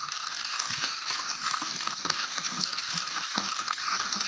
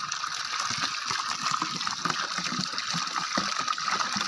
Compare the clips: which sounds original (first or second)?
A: second